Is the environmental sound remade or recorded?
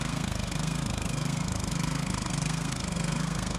remade